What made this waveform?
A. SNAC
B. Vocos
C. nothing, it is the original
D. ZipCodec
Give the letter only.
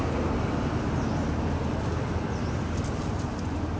C